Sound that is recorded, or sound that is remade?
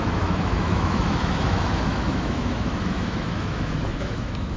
remade